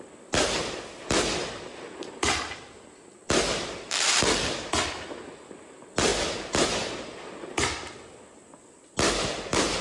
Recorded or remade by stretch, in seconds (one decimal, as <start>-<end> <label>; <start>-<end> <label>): 0.0-9.8 recorded